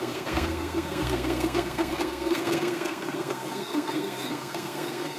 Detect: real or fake fake